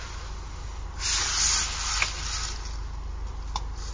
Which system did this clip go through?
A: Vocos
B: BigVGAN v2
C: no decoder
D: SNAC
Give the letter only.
C